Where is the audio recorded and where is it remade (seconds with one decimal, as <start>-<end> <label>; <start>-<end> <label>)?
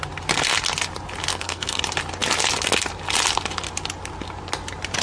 0.0-1.3 recorded; 1.3-1.8 remade; 1.8-5.0 recorded